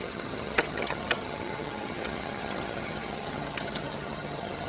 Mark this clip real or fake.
fake